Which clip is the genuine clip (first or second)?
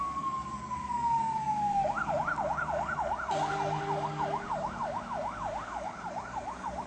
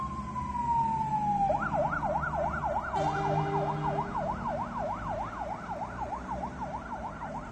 second